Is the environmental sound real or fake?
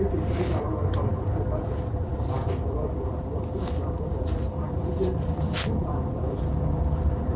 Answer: fake